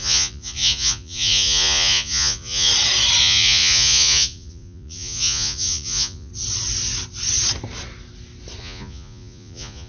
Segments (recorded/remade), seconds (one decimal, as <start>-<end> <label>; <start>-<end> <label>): 0.0-2.7 remade; 2.7-3.2 recorded; 3.2-6.3 remade; 6.3-8.6 recorded; 8.6-9.9 remade